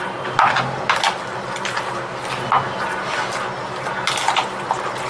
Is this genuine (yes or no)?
yes